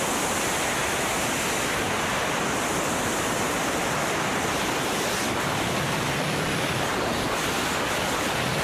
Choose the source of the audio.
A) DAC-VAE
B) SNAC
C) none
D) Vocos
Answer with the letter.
C